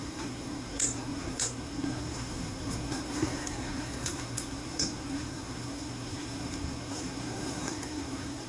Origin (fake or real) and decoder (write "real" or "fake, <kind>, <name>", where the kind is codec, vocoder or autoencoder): fake, codec, SNAC